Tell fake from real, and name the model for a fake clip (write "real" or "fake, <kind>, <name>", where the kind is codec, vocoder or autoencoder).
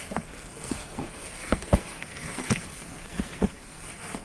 fake, codec, SNAC